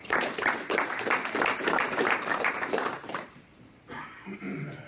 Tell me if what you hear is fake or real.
fake